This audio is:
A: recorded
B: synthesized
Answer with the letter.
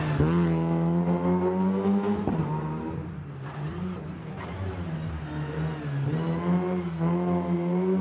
A